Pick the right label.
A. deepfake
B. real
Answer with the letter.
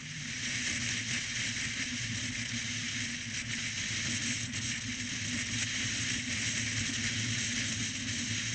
B